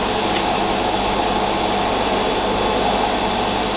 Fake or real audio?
real